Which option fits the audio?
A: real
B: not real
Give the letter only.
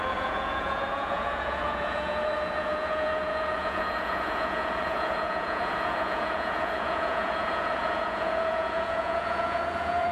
B